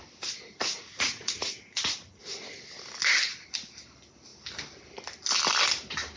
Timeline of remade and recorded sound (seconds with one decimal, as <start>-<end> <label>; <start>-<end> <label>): 0.0-0.7 recorded; 0.7-2.6 remade; 2.6-6.2 recorded

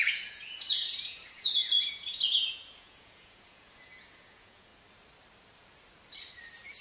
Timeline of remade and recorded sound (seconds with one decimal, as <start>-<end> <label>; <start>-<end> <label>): 0.0-4.7 remade; 4.7-6.8 recorded

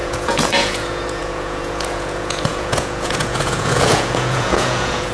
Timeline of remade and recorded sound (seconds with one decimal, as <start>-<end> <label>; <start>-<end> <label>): 0.0-5.1 remade

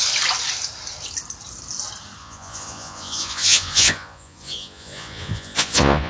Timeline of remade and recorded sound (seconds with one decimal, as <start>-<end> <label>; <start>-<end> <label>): 0.0-2.2 recorded; 2.2-6.1 remade

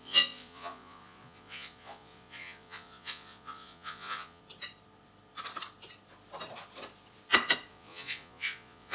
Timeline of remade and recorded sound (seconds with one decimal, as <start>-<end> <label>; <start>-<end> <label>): 0.0-4.4 remade; 4.4-7.7 recorded; 7.7-8.9 remade